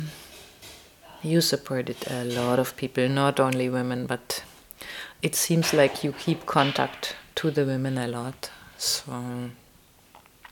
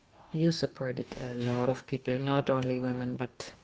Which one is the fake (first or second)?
second